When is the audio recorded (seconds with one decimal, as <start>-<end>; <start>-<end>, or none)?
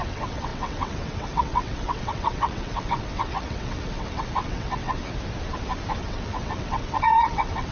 5.0-6.0